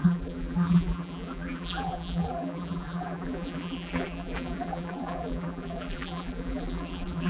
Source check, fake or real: fake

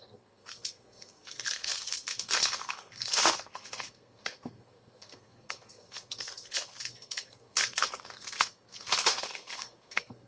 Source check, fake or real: fake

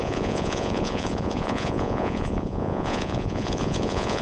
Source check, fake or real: fake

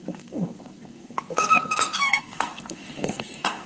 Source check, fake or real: fake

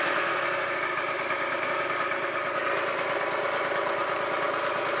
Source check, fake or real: real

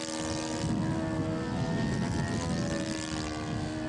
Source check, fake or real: real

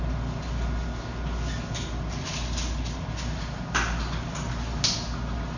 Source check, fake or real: real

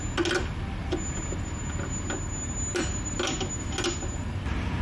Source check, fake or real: real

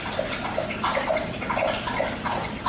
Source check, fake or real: real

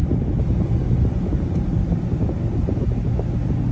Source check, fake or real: real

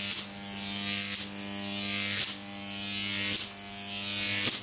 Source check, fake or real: real